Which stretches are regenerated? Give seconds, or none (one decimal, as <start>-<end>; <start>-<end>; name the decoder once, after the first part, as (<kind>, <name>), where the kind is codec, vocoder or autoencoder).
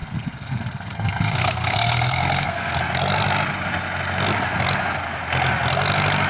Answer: 0.0-2.8 (codec, SNAC)